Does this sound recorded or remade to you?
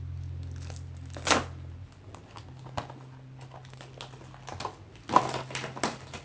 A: recorded